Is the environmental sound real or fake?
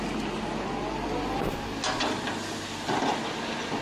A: real